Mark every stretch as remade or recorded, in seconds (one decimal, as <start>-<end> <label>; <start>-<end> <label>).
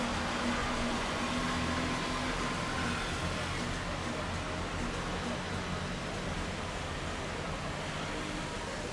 0.0-0.6 recorded; 0.6-1.2 remade; 1.2-8.9 recorded